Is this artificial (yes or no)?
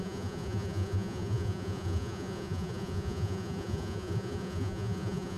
yes